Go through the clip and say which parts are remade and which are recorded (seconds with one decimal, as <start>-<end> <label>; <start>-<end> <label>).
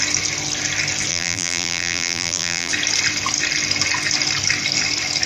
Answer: 0.0-1.1 recorded; 1.1-2.7 remade; 2.7-5.3 recorded